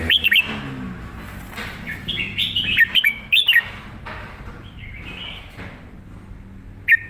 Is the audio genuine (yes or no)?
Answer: yes